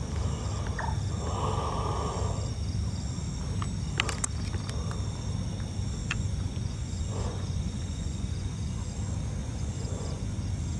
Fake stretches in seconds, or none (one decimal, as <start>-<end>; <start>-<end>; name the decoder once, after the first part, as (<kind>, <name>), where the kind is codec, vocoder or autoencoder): 6.0-8.9 (vocoder, Vocos); 9.4-10.4